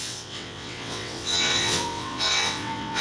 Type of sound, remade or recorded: remade